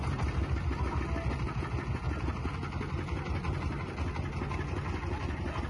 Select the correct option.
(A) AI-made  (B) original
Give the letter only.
B